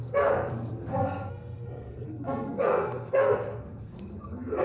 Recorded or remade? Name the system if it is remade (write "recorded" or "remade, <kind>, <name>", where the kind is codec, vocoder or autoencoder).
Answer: remade, codec, SNAC